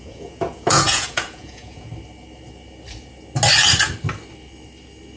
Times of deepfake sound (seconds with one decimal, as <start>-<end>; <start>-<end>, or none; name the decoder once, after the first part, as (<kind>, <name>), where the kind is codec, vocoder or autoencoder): 0.0-1.9 (vocoder, Vocos)